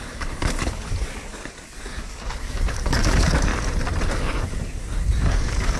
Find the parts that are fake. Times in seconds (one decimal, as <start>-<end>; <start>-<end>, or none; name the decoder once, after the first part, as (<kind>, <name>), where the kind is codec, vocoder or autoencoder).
0.0-3.5 (codec, DAC); 4.1-5.8